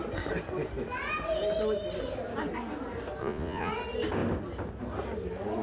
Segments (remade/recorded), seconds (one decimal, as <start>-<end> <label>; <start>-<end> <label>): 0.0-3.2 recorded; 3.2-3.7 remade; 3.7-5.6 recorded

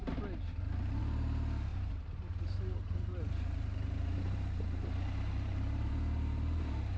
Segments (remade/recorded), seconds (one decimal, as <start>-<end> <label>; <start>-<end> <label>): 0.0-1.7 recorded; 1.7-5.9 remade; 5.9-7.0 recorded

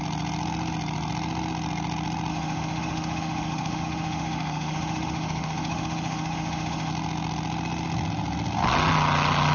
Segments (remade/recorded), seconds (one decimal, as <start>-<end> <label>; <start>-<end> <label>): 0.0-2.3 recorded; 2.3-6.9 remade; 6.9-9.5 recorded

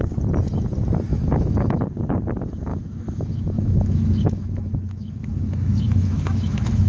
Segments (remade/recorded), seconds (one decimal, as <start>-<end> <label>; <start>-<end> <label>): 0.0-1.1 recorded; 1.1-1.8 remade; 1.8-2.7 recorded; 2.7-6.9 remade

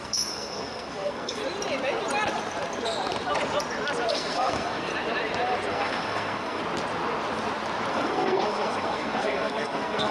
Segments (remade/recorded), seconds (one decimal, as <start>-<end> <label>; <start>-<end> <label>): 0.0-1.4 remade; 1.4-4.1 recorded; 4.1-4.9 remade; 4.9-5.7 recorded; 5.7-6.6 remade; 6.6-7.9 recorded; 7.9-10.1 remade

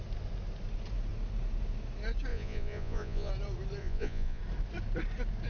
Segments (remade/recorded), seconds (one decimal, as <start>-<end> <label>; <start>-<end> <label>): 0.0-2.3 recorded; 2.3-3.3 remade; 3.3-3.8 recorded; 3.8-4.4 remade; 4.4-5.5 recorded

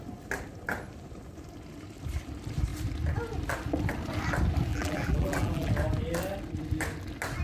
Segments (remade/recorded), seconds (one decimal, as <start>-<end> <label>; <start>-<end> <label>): 0.0-4.7 recorded; 4.7-5.7 remade; 5.7-7.4 recorded

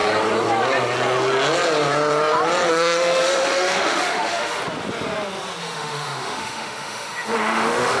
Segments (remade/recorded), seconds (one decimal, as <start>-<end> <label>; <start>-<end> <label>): 0.0-2.7 recorded; 2.7-4.6 remade; 4.6-5.6 recorded; 5.6-8.0 remade